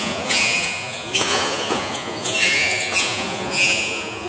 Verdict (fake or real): fake